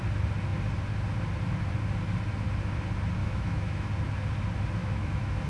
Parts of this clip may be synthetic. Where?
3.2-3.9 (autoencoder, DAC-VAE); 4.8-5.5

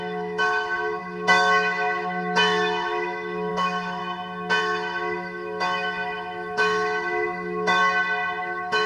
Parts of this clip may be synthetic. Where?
0.0-4.0 (autoencoder, DAC-VAE); 4.6-7.8; 8.4-8.9

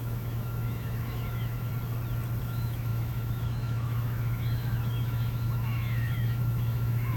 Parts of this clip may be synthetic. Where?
0.0-1.7 (autoencoder, DAC-VAE); 2.4-7.2